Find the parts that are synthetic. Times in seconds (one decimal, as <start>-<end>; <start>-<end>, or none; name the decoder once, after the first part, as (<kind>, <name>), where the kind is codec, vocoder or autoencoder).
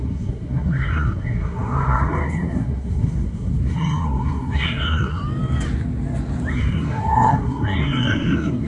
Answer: 0.0-5.2 (codec, SNAC); 6.5-8.7